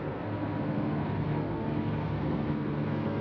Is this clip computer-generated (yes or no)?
yes